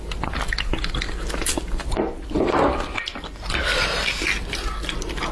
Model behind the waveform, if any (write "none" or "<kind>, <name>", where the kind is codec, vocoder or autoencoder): none